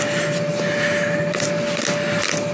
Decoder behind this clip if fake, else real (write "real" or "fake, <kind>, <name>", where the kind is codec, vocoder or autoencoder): real